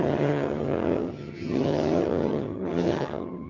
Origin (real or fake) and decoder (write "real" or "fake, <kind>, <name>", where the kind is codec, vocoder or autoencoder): fake, vocoder, HiFi-GAN